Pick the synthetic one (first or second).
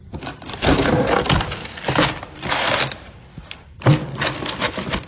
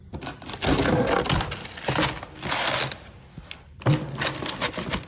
first